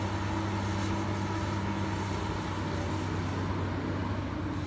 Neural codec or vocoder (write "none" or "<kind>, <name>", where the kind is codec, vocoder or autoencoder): none